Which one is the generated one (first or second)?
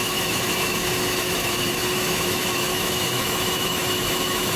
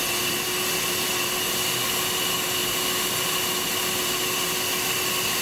first